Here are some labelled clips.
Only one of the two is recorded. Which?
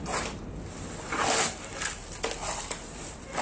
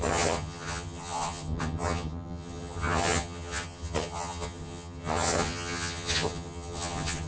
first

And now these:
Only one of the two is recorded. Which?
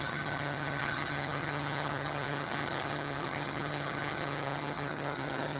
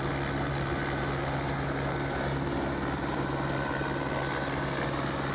second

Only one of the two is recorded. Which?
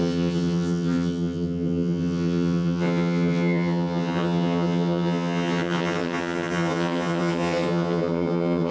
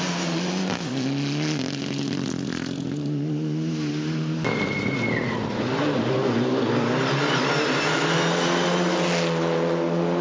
second